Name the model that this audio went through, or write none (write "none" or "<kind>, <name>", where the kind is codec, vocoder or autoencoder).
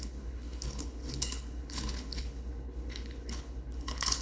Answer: codec, HILCodec